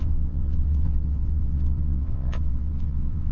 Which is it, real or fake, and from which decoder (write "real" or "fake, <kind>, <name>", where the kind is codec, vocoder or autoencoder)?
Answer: fake, vocoder, WaveNeXt